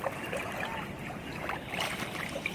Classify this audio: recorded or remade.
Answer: recorded